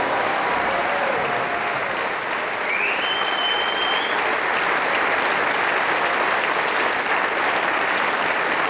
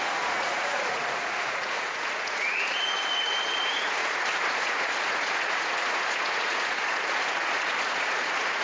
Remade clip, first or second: second